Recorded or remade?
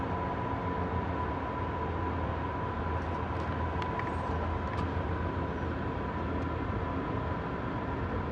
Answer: recorded